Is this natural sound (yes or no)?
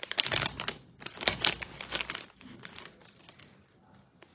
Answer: yes